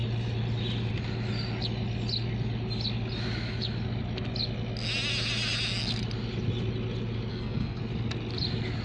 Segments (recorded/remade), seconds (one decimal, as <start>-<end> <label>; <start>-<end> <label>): 0.0-7.3 recorded; 7.3-7.8 remade; 7.8-8.8 recorded